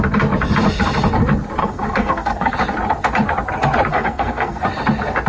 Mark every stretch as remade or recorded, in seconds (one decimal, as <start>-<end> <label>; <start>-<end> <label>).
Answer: 0.0-1.6 recorded; 1.6-2.5 remade; 2.5-3.9 recorded; 3.9-4.6 remade; 4.6-5.3 recorded